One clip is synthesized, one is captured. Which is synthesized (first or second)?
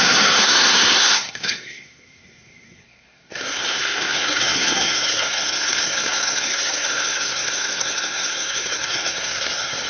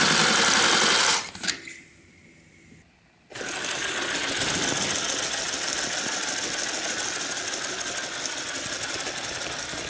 first